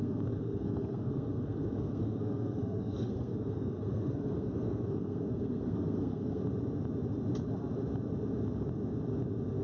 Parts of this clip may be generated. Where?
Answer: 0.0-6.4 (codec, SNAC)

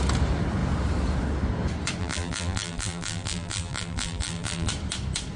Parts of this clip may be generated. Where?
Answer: 2.0-4.7 (vocoder, BigVGAN v2)

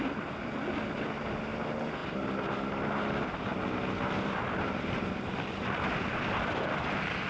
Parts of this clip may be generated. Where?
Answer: none

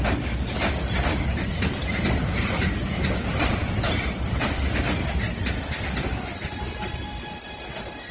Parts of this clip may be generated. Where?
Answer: none

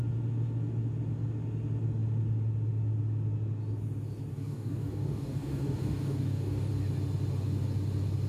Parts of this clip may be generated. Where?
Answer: 4.3-6.7 (codec, DAC)

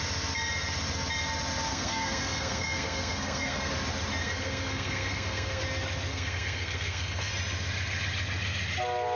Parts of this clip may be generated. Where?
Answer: 1.7-3.7 (codec, SNAC); 4.2-5.6; 6.1-7.3

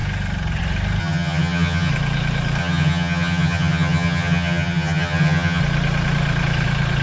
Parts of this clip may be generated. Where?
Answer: 1.0-1.9 (vocoder, HiFi-GAN); 2.6-5.6

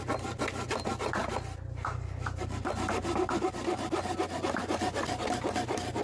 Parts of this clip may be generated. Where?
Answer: none